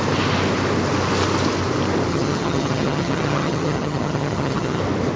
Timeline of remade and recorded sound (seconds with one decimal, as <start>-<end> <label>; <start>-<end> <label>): 0.0-2.1 recorded; 2.1-4.8 remade; 4.8-5.2 recorded